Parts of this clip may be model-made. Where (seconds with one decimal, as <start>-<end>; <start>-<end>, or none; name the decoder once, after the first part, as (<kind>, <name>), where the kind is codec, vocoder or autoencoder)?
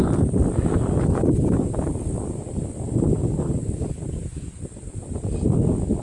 none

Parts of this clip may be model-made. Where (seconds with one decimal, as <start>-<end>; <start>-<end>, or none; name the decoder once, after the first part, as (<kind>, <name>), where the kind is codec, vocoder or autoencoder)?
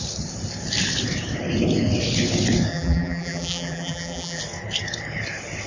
2.7-4.4 (vocoder, BigVGAN v2)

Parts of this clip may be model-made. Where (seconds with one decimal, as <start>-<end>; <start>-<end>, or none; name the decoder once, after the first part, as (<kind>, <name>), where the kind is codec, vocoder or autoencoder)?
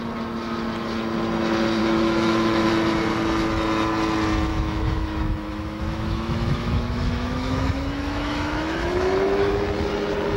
1.8-2.7 (autoencoder, DAC-VAE); 4.5-9.5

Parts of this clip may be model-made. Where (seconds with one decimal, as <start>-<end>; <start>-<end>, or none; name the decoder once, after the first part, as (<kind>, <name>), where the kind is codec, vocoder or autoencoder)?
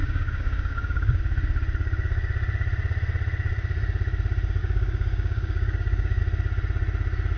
0.0-1.2 (codec, DAC); 4.6-6.2